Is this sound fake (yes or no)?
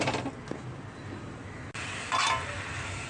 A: no